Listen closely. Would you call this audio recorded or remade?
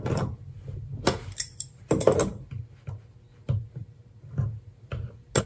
recorded